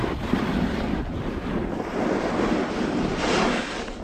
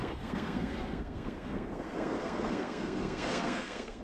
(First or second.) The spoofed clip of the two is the second